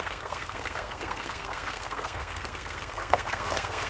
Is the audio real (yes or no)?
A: no